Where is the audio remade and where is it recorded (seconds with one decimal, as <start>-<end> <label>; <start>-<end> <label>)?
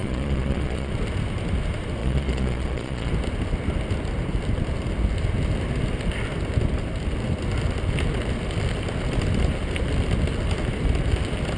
0.0-0.9 remade; 0.9-2.0 recorded; 2.0-3.1 remade; 3.1-11.6 recorded